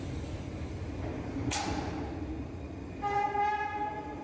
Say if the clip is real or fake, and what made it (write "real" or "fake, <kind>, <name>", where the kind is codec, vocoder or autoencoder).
real